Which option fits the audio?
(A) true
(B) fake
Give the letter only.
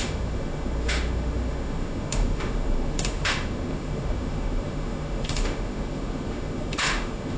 B